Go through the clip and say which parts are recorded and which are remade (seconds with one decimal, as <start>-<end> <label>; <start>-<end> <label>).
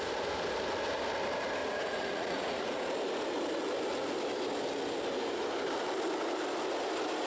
0.0-1.6 recorded; 1.6-2.9 remade; 2.9-7.3 recorded